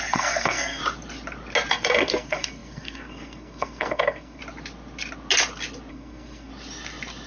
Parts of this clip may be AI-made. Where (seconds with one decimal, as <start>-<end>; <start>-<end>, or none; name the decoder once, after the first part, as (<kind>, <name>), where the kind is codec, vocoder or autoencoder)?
0.0-0.8 (codec, SNAC); 1.7-4.4; 5.9-6.5